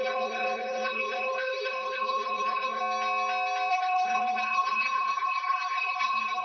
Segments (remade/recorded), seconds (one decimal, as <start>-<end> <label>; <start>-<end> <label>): 0.0-2.8 remade; 2.8-3.7 recorded; 3.7-6.4 remade